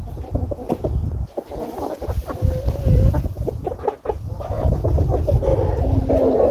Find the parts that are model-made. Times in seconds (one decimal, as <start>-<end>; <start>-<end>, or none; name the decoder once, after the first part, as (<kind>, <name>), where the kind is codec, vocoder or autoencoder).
0.0-1.0 (vocoder, Vocos); 1.6-2.2; 2.8-5.5

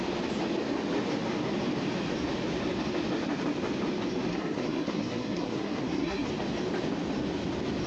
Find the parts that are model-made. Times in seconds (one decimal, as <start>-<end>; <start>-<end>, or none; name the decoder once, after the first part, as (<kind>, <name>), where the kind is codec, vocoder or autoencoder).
4.3-6.3 (codec, SNAC)

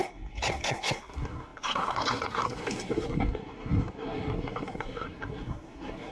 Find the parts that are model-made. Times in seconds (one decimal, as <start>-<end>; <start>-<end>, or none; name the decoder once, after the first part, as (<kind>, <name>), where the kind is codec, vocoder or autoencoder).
0.0-6.1 (codec, SNAC)